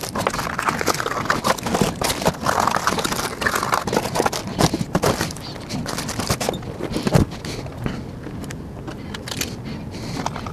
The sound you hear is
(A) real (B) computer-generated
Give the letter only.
A